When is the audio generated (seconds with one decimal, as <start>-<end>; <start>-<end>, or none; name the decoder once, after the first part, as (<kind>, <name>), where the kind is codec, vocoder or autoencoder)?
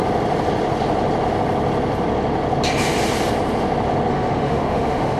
4.1-5.2 (autoencoder, DAC-VAE)